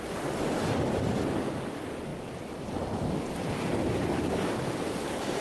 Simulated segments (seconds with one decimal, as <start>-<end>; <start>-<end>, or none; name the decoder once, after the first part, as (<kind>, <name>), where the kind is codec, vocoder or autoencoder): none